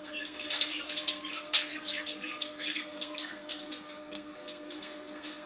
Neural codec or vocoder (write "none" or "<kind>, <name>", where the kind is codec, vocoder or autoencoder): codec, SNAC